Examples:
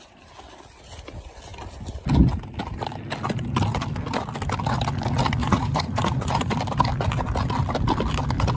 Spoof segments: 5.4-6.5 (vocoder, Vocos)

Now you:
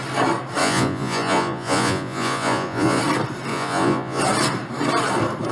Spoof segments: 0.6-3.0 (vocoder, Vocos); 3.5-4.2